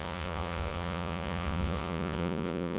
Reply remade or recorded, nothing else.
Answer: remade